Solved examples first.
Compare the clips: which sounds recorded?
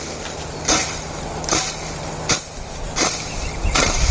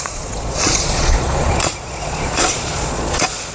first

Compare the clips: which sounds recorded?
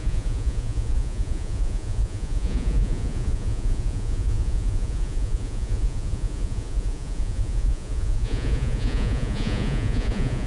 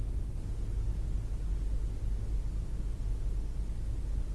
second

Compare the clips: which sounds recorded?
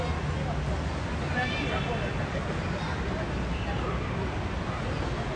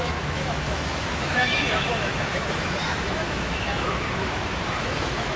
first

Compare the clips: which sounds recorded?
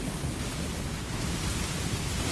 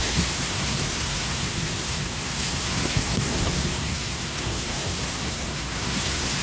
first